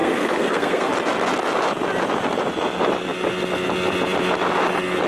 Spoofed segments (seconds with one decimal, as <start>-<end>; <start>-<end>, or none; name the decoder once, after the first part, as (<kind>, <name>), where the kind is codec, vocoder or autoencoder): 0.0-0.9 (codec, SNAC)